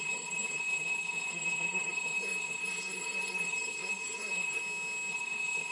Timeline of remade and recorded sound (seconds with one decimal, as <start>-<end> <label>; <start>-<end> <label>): 0.0-4.6 remade; 4.6-5.1 recorded; 5.1-5.7 remade